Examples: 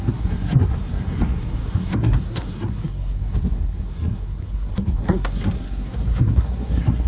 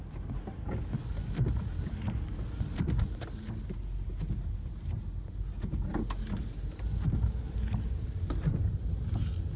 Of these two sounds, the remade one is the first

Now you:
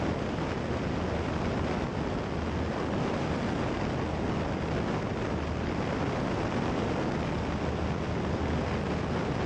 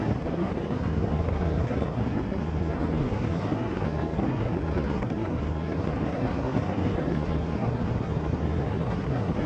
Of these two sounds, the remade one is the second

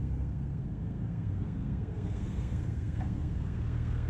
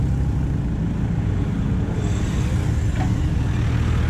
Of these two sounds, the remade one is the first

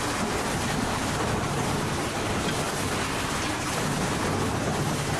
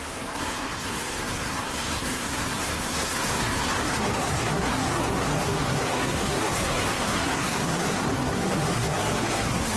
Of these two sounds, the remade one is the second